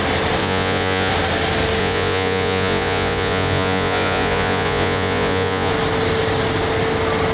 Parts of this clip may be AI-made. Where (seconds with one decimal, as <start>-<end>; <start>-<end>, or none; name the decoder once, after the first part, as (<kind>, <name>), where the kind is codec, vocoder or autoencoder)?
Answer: 0.4-1.1 (vocoder, Vocos); 1.8-5.7